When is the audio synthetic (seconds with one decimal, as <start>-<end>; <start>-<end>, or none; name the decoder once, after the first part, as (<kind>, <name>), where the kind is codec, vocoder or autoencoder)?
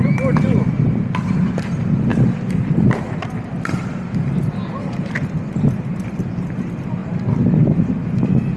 2.1-6.2 (vocoder, BigVGAN v2); 7.0-8.6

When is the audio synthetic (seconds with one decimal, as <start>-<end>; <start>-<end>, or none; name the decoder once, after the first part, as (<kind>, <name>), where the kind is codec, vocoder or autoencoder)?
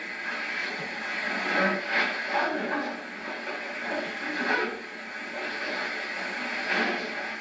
0.6-1.3 (vocoder, WaveNeXt); 3.2-4.1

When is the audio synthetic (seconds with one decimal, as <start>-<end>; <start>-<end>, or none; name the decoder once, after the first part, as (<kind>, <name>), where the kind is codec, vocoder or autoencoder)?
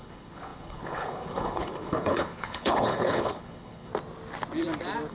0.0-3.9 (codec, HILCodec)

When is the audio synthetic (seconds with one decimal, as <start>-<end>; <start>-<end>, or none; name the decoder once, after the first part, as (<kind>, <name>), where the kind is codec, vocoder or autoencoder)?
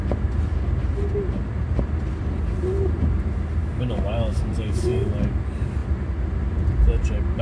3.6-5.1 (codec, DAC)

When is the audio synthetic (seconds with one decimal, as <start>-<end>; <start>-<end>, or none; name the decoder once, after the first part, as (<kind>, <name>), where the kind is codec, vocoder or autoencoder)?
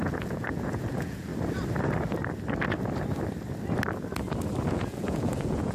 0.0-1.3 (vocoder, Vocos); 4.7-5.7